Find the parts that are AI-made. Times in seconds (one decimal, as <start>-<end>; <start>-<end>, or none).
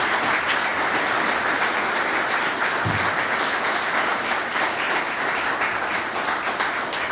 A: none